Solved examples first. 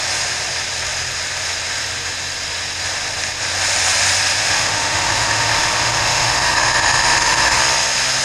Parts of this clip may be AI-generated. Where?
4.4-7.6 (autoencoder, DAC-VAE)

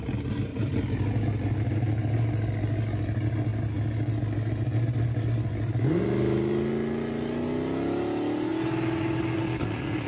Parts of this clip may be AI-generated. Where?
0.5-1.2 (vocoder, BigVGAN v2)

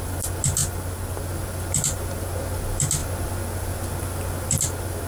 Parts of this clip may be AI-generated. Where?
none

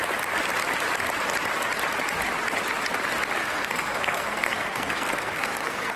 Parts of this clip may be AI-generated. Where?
3.4-6.0 (codec, SNAC)